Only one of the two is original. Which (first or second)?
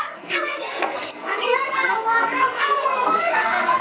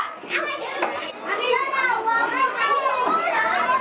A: second